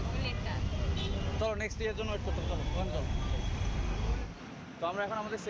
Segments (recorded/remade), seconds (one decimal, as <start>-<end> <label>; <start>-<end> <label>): 0.0-5.5 recorded